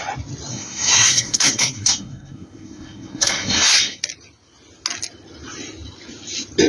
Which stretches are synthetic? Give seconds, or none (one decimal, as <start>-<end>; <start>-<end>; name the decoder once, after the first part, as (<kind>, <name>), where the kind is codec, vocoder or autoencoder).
0.5-4.0 (codec, SNAC)